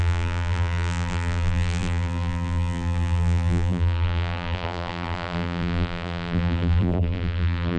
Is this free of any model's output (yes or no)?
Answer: no